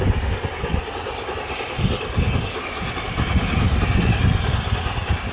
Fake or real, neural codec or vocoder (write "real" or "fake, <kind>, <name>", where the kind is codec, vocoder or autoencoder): real